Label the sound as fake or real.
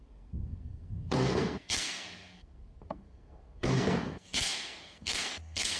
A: fake